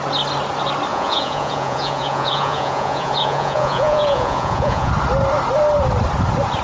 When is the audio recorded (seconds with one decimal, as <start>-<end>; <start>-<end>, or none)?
0.0-0.9; 4.9-6.6